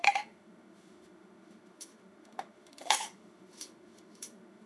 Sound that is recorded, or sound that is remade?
remade